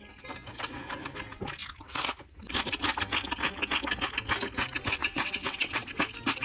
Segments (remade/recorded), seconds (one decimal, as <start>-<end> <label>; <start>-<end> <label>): 0.0-5.0 recorded; 5.0-6.0 remade; 6.0-6.4 recorded